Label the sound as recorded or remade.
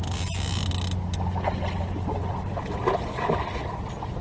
recorded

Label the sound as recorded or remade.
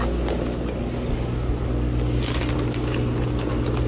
recorded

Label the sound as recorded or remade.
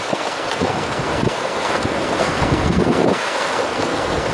remade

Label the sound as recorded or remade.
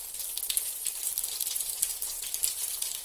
recorded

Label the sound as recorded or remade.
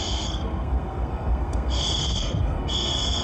remade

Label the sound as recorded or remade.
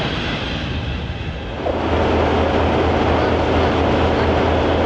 recorded